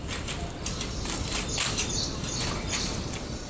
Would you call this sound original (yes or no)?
yes